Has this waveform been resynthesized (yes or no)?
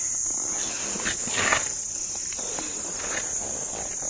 yes